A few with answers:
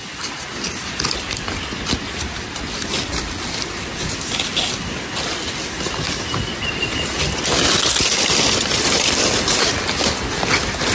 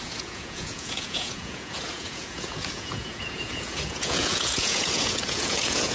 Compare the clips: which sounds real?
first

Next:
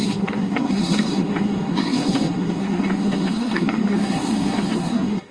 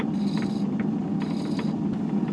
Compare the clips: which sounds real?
second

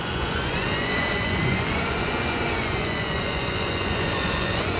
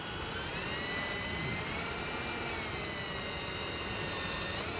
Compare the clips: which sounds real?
second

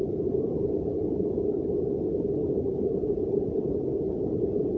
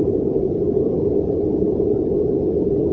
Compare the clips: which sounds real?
second